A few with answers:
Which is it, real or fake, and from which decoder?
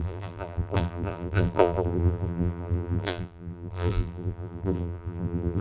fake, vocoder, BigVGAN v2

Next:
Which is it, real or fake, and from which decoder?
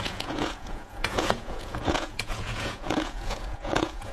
fake, vocoder, Vocos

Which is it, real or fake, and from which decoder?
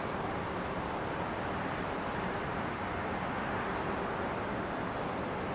real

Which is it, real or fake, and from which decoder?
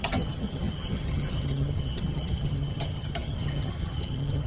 fake, vocoder, HiFi-GAN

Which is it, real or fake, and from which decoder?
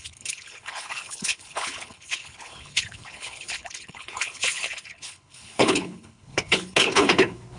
fake, codec, HILCodec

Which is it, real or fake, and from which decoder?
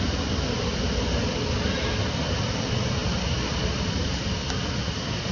real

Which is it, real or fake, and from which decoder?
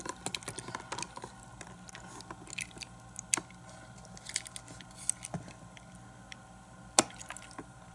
real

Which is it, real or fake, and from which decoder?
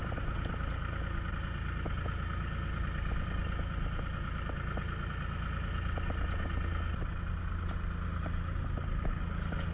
real